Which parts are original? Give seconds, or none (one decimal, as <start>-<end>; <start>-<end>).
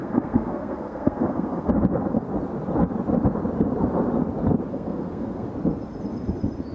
1.7-4.7; 5.5-6.7